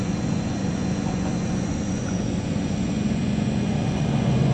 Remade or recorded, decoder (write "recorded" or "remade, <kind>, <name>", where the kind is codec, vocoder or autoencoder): remade, vocoder, Vocos